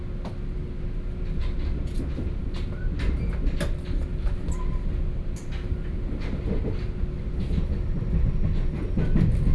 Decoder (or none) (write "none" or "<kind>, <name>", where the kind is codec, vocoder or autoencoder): none